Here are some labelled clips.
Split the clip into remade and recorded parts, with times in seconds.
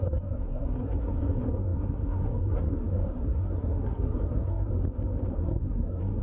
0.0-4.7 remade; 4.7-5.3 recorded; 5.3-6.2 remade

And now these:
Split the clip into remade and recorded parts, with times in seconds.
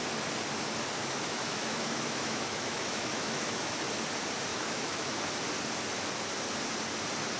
0.0-1.0 recorded; 1.0-3.7 remade; 3.7-4.5 recorded; 4.5-5.3 remade; 5.3-7.4 recorded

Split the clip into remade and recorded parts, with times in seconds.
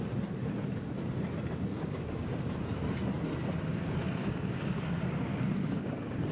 0.0-1.7 recorded; 1.7-2.3 remade; 2.3-4.2 recorded; 4.2-4.8 remade; 4.8-5.3 recorded; 5.3-6.3 remade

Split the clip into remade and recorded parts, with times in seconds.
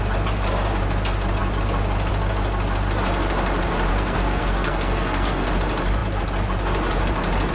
0.0-3.9 recorded; 3.9-5.5 remade; 5.5-7.5 recorded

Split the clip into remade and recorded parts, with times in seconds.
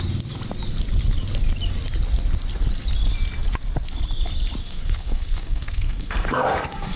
0.0-4.6 recorded; 4.6-7.0 remade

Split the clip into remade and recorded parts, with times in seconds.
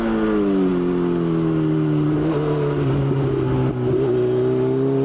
0.0-5.0 recorded